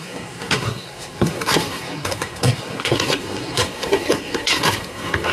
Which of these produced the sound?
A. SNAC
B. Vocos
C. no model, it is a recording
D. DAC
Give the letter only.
A